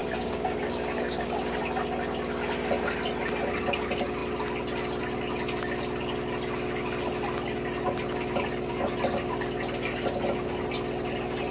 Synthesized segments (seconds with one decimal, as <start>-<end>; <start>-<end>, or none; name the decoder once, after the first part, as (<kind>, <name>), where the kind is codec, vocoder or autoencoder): 0.0-1.6 (codec, DAC)